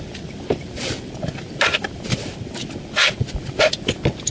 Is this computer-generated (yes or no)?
no